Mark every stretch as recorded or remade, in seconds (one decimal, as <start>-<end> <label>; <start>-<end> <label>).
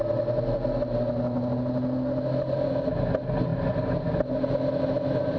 0.0-5.4 recorded